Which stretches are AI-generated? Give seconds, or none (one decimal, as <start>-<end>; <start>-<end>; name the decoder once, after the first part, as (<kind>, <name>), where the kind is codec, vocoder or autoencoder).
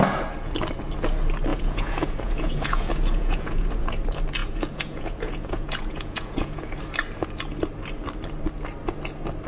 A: 1.5-3.9 (vocoder, Vocos); 4.4-6.8